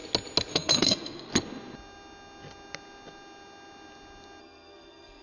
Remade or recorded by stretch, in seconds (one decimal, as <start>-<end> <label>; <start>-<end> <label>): 0.0-0.5 recorded; 0.5-1.3 remade; 1.3-4.4 recorded; 4.4-5.2 remade